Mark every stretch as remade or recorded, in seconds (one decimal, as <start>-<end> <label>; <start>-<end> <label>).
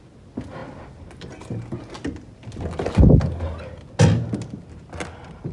0.0-5.5 recorded